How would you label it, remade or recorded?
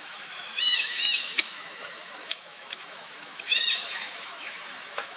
remade